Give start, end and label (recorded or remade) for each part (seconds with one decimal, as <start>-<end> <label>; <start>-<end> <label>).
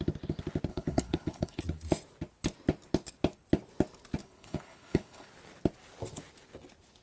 0.0-0.7 recorded; 0.7-1.6 remade; 1.6-4.2 recorded; 4.2-5.3 remade; 5.3-7.0 recorded